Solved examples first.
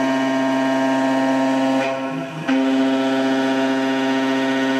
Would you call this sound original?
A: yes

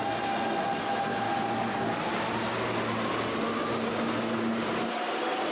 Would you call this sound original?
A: yes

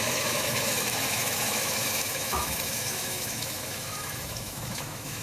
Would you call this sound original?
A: no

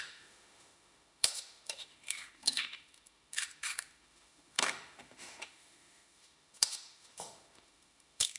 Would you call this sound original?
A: no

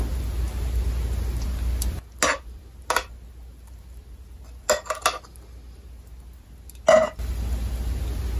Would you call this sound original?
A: yes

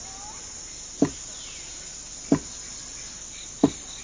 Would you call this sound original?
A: yes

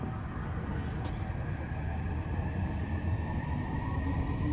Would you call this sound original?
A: yes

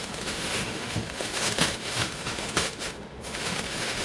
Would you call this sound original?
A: no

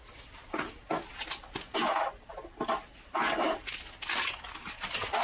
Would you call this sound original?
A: yes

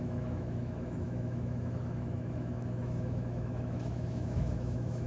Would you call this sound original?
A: no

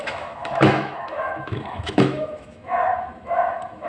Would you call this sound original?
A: no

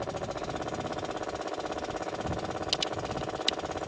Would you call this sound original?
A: yes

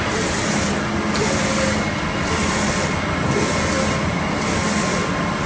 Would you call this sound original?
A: yes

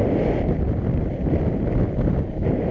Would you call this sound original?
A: yes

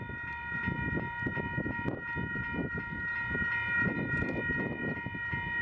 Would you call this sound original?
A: yes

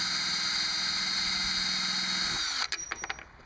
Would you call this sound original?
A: yes